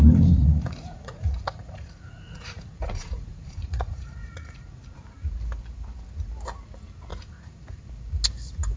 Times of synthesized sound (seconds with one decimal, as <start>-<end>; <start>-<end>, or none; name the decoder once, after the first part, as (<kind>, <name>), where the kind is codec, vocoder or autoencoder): 0.4-4.8 (vocoder, Vocos); 7.1-7.9